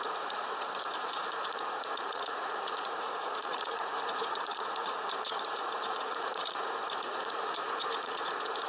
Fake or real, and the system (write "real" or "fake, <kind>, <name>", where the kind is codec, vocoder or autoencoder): fake, vocoder, Vocos